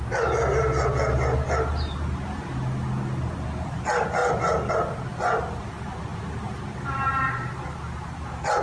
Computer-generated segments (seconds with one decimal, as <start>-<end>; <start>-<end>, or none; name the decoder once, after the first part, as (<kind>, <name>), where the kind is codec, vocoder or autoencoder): none